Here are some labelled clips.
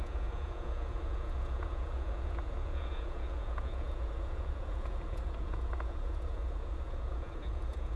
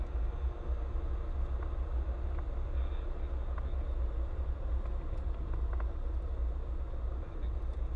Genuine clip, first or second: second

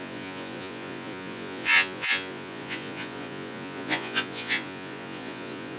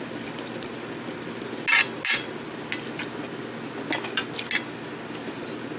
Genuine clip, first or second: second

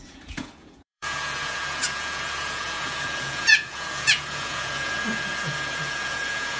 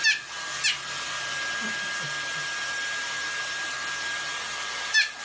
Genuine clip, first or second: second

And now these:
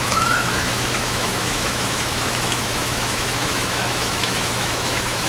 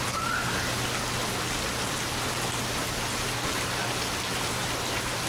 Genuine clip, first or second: second